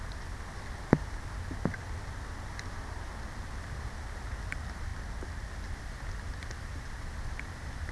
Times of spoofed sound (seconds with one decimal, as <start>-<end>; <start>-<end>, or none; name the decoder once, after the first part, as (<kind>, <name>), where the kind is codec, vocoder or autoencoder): none